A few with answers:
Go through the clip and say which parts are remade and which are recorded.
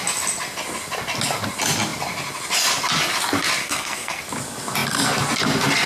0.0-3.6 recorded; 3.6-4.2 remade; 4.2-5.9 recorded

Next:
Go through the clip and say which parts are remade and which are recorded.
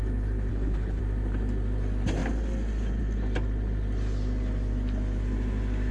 0.0-0.5 recorded; 0.5-1.0 remade; 1.0-5.9 recorded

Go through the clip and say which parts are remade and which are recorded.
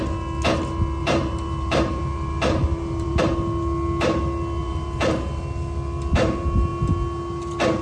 0.0-1.0 recorded; 1.0-3.2 remade; 3.2-4.6 recorded; 4.6-5.4 remade; 5.4-7.8 recorded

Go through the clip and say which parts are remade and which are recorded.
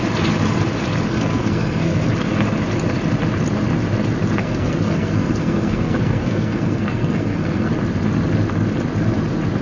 0.0-1.1 recorded; 1.1-2.1 remade; 2.1-4.4 recorded; 4.4-7.7 remade; 7.7-9.6 recorded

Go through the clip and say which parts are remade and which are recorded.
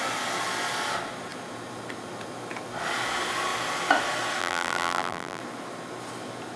0.0-4.4 recorded; 4.4-5.4 remade; 5.4-6.6 recorded